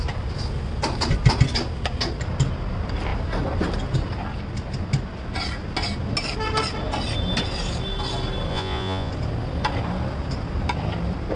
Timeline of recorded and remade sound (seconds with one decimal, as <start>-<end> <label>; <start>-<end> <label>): 0.0-8.5 recorded; 8.5-9.1 remade; 9.1-11.4 recorded